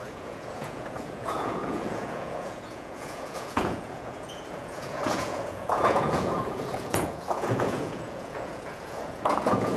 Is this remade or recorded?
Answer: remade